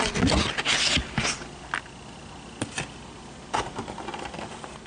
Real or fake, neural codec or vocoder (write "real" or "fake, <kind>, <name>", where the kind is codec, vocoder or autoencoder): real